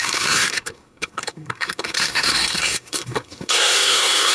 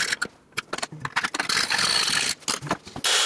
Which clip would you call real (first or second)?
second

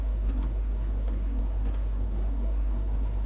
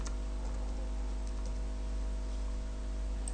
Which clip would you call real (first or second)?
second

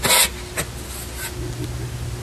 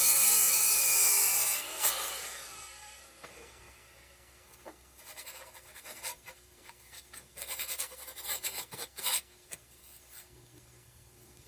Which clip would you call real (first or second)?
first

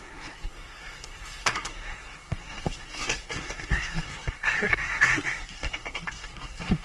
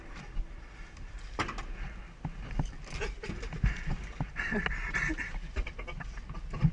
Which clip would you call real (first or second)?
second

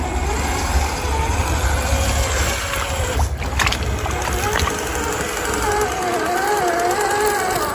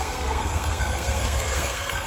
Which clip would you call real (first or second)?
first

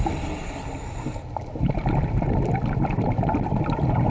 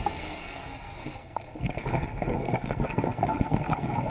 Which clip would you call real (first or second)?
first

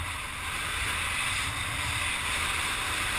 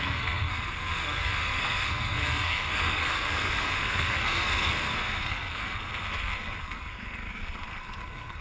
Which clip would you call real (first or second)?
first